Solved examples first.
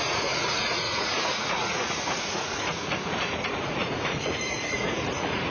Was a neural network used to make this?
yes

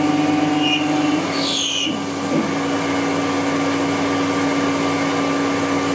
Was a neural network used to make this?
no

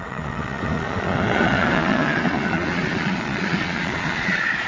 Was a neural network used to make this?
yes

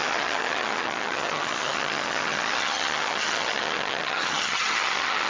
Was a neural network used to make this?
yes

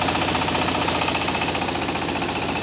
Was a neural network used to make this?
no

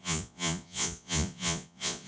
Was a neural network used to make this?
yes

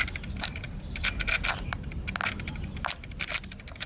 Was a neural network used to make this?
no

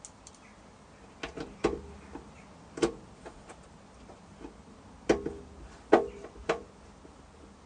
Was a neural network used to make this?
no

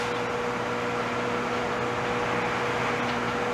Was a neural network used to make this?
no